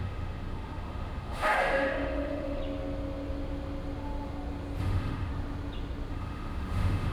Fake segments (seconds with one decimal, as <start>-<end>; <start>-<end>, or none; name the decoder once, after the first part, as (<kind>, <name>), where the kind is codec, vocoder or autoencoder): 0.0-2.6 (autoencoder, DAC-VAE); 4.8-5.3; 6.1-7.1